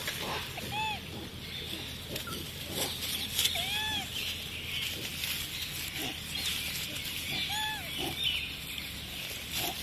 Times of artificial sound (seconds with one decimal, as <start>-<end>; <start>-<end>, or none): none